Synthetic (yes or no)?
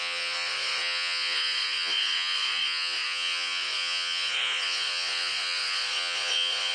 yes